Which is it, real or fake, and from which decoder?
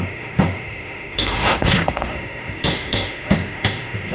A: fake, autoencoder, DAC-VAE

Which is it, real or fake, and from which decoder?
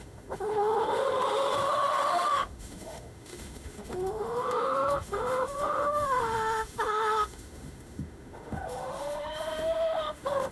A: fake, autoencoder, DAC-VAE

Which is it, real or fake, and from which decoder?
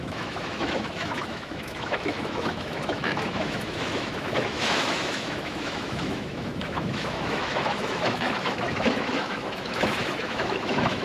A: fake, autoencoder, DAC-VAE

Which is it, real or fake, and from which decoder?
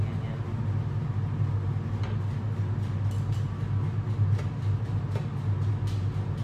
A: real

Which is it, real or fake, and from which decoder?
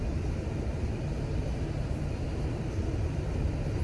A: real